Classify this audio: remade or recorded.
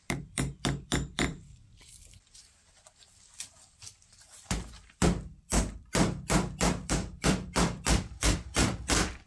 remade